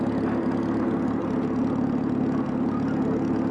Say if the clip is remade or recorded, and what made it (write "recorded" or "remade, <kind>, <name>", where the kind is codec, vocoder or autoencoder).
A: recorded